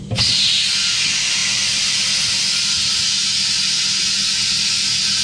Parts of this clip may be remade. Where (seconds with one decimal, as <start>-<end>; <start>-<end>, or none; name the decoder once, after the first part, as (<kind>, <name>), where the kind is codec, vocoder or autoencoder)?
none